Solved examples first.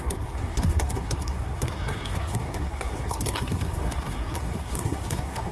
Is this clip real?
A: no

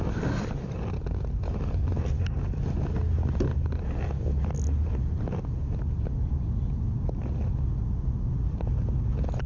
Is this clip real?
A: yes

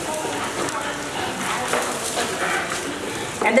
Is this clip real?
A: yes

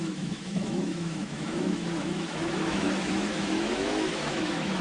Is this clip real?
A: no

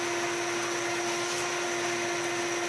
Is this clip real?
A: yes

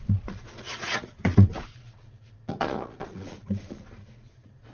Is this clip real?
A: no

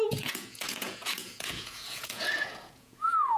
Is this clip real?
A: no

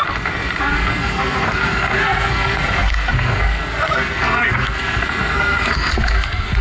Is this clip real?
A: no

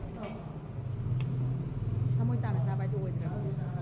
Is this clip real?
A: yes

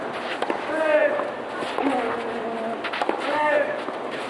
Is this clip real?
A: yes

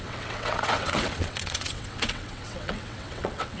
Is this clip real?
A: no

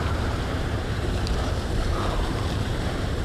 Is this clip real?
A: no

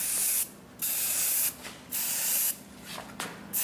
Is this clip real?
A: yes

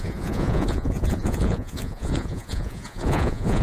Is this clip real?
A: no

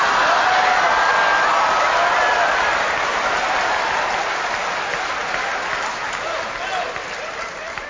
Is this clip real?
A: yes